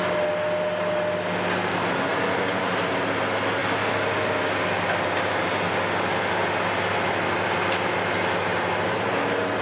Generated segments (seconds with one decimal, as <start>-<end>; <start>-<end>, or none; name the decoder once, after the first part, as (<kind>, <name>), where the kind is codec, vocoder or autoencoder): 2.1-2.9 (vocoder, BigVGAN v2)